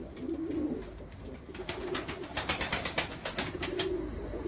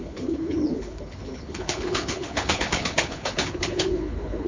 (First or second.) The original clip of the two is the first